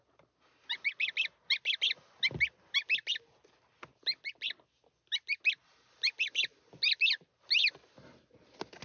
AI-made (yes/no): no